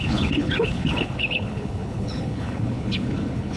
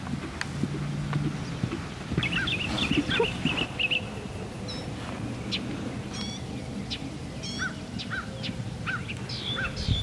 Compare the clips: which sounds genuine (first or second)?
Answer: second